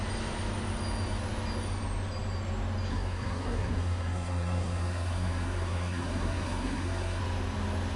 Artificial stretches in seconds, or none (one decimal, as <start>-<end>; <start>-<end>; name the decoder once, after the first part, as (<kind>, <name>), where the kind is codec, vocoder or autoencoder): 2.9-7.2 (codec, SNAC)